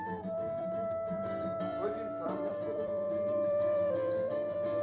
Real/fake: fake